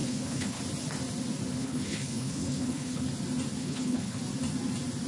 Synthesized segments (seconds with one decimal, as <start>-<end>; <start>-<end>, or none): 0.0-0.6; 1.6-3.0; 3.6-4.2